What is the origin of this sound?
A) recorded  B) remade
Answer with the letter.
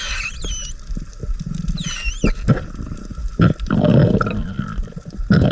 A